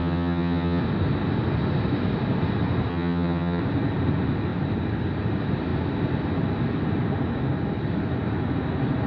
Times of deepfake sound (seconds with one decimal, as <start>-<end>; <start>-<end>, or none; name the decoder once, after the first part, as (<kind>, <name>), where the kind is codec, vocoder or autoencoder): 0.0-0.8 (vocoder, HiFi-GAN); 2.9-3.6